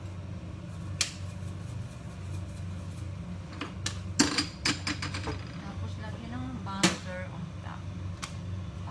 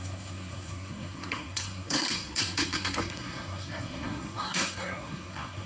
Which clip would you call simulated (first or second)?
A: second